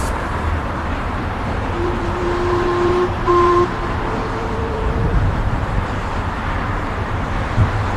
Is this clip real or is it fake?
fake